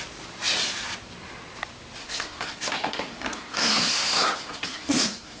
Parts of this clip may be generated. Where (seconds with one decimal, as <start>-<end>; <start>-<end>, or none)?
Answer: 2.0-5.4